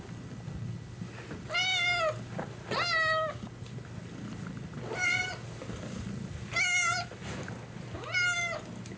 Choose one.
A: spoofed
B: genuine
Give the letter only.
B